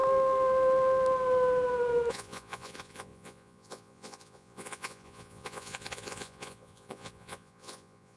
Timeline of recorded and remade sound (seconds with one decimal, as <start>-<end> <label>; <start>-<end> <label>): 0.0-2.1 recorded; 2.1-8.2 remade